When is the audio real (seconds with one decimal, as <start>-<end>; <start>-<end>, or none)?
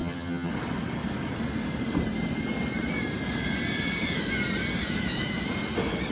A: 0.5-6.1